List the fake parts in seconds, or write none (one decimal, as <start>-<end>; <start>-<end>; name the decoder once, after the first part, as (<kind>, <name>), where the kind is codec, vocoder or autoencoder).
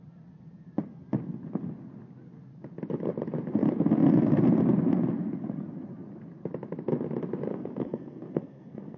7.5-9.0 (codec, SNAC)